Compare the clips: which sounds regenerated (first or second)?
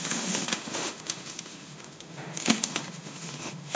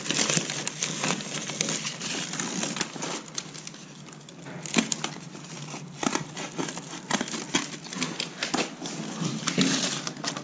first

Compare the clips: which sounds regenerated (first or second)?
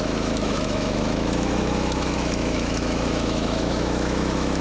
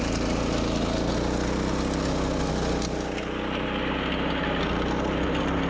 first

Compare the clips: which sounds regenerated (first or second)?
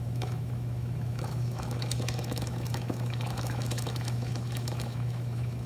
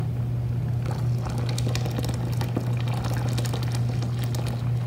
first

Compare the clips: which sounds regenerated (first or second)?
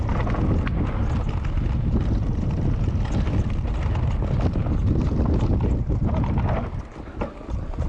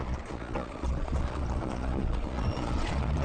second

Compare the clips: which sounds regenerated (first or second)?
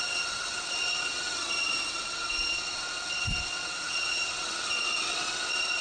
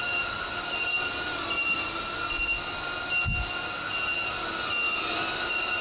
first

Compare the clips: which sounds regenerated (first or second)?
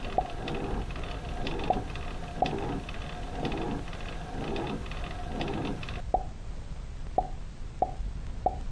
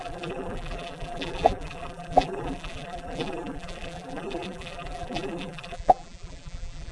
second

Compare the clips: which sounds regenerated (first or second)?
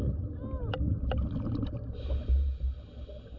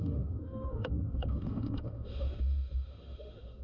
second